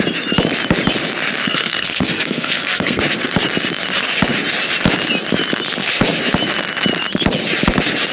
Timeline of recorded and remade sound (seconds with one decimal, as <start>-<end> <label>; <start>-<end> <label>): 0.0-1.4 recorded; 1.4-3.0 remade; 3.0-8.1 recorded